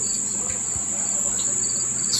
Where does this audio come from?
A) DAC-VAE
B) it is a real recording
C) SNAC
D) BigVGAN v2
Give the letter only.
B